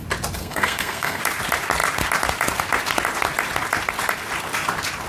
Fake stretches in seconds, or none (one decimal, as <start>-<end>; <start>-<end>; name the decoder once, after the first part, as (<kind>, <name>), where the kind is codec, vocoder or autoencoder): 0.4-1.2 (codec, SNAC)